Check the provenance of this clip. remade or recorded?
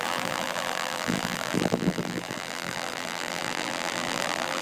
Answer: remade